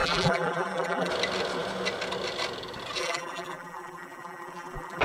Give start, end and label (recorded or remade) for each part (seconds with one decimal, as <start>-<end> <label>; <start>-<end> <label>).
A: 0.0-1.1 remade; 1.1-3.0 recorded; 3.0-5.0 remade